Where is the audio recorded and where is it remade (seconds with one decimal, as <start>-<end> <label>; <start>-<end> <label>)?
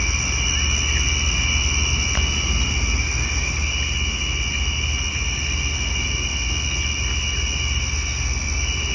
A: 0.0-8.9 recorded